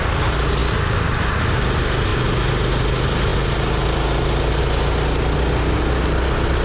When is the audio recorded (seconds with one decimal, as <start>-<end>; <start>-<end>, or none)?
0.0-6.6